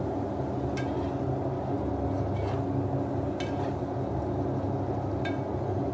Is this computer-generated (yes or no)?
no